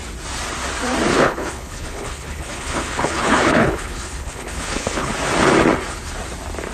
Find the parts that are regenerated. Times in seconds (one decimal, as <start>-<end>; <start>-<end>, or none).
1.1-5.1